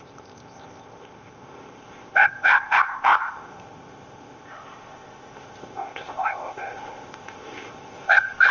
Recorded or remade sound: remade